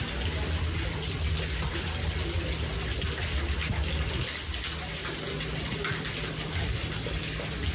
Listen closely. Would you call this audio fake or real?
real